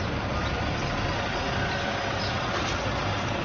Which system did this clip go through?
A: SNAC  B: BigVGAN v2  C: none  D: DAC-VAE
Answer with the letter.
C